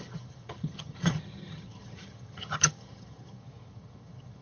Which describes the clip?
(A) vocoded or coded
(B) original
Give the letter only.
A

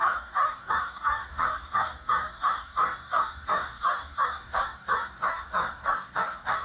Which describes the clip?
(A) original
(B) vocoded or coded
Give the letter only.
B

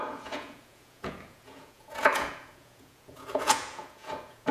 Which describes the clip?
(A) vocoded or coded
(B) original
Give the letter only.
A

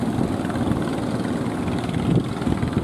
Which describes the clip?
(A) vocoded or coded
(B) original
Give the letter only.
B